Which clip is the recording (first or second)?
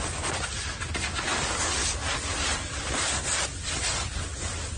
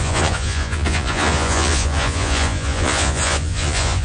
first